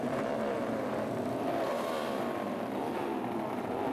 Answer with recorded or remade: recorded